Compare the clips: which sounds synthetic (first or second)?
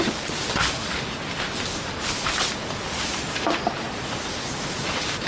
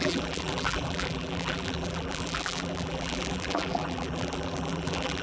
second